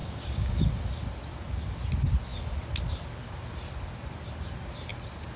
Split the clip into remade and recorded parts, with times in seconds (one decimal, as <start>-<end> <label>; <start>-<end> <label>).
0.0-0.6 remade; 0.6-5.4 recorded